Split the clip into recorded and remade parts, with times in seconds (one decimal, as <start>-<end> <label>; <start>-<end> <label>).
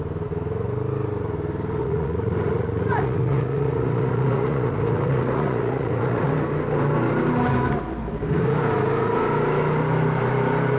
0.0-1.8 recorded; 1.8-6.3 remade; 6.3-10.8 recorded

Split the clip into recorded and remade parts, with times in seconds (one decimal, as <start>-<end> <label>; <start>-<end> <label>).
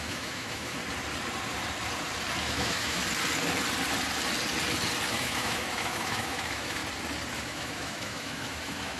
0.0-0.8 remade; 0.8-2.4 recorded; 2.4-3.0 remade; 3.0-5.1 recorded; 5.1-6.8 remade; 6.8-7.4 recorded; 7.4-9.0 remade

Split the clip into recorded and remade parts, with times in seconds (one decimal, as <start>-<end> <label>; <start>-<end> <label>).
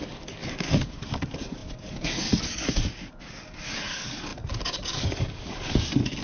0.0-6.2 remade